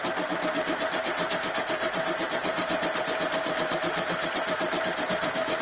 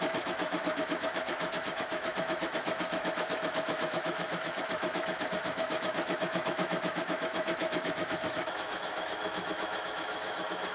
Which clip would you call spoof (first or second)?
second